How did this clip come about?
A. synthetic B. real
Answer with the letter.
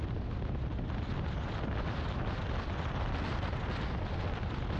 B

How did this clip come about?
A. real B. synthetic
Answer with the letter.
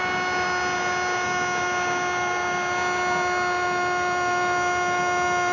A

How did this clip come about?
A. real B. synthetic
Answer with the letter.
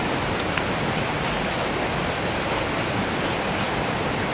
B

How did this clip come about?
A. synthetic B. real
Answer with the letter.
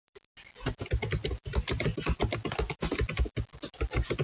B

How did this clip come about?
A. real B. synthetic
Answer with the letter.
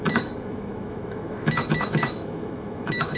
B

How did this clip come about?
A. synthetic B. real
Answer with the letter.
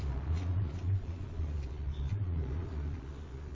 A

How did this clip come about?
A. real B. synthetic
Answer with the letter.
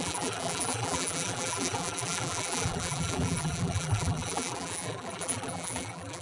B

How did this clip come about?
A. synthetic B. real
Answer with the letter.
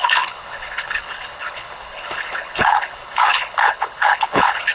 A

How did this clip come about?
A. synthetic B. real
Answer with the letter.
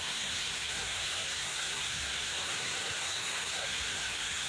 A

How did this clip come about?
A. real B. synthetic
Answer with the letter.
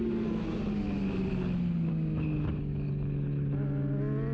A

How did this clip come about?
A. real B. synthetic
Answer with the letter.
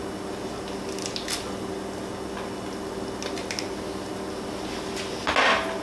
A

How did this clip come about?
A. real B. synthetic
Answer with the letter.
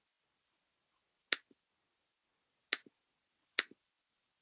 A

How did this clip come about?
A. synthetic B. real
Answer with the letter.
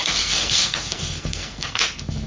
A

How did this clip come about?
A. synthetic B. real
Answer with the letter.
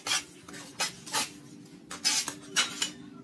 B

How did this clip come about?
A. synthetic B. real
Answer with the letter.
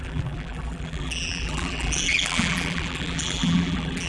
A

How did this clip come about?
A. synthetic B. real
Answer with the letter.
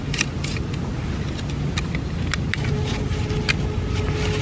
B